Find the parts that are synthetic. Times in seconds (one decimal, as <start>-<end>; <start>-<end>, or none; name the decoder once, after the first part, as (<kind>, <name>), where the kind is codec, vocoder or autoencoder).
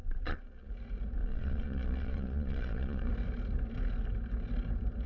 0.0-0.7 (vocoder, Vocos); 1.2-3.1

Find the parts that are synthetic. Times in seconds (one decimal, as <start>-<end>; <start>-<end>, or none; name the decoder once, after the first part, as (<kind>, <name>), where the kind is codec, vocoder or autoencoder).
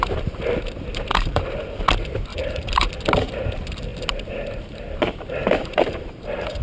1.1-1.8 (vocoder, BigVGAN v2); 2.3-2.9; 5.6-6.6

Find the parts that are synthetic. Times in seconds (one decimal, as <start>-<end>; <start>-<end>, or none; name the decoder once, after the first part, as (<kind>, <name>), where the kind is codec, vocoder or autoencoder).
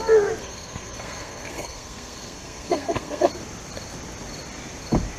0.4-3.3 (codec, SNAC)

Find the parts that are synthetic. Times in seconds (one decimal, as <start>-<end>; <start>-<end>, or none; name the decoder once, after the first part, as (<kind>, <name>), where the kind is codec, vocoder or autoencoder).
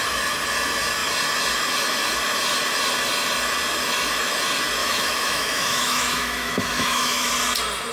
4.8-7.3 (autoencoder, DAC-VAE)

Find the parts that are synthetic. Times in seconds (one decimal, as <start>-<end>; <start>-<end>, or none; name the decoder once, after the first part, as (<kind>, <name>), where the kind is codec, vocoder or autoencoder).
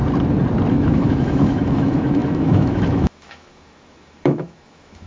0.7-5.1 (autoencoder, DAC-VAE)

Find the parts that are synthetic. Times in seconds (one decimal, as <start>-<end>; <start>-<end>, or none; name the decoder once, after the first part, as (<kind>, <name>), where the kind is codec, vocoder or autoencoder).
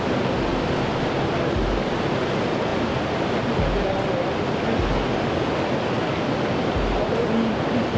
none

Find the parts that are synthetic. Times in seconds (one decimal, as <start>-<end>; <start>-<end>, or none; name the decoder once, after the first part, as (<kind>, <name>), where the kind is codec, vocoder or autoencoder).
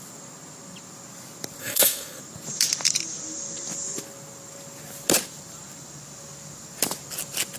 1.6-2.2 (codec, SNAC)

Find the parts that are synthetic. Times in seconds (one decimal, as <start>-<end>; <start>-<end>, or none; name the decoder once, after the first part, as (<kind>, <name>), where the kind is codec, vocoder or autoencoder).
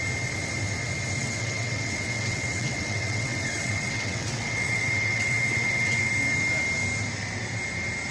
1.2-6.1 (vocoder, WaveNeXt)